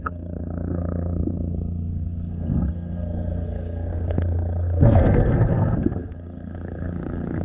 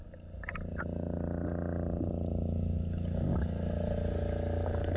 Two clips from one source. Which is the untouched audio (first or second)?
second